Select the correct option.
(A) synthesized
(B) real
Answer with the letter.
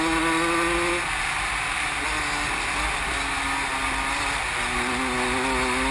B